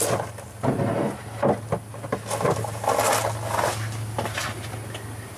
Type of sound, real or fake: real